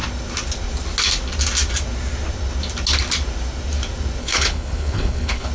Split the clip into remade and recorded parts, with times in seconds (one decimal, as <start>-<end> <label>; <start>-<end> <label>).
0.0-4.2 recorded; 4.2-5.5 remade